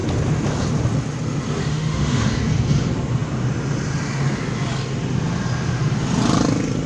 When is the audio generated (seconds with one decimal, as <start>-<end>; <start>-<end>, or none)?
1.7-2.3